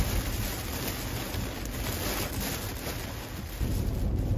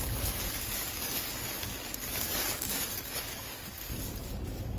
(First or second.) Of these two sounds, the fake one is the second